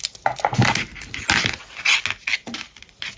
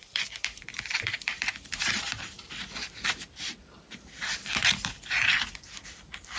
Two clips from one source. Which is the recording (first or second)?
first